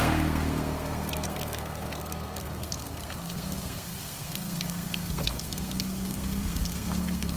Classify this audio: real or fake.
fake